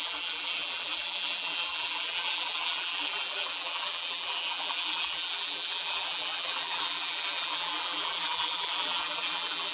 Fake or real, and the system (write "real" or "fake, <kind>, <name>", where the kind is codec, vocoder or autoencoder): fake, vocoder, BigVGAN v2